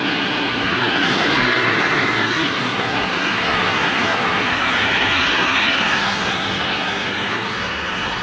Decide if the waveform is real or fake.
fake